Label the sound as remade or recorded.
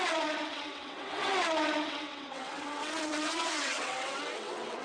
remade